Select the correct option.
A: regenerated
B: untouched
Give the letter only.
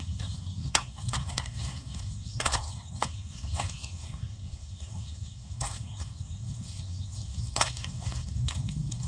A